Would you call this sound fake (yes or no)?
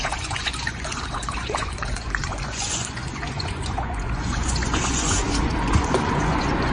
yes